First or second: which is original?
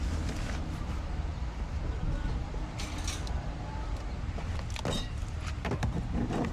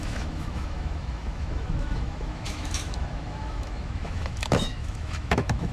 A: first